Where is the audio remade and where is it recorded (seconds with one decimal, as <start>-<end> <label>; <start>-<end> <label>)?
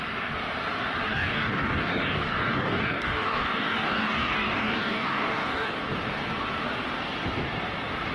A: 0.0-1.1 recorded; 1.1-5.9 remade; 5.9-8.1 recorded